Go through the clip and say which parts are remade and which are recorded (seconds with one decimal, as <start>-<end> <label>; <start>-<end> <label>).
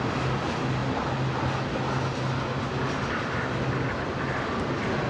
0.0-5.1 recorded